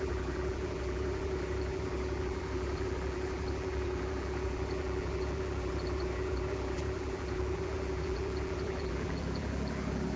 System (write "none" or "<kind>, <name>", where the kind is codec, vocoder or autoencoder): vocoder, BigVGAN v2